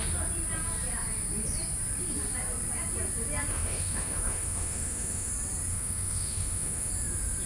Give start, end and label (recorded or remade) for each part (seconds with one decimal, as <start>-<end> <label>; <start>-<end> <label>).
0.0-3.5 recorded; 3.5-5.3 remade; 5.3-5.7 recorded; 5.7-6.9 remade; 6.9-7.5 recorded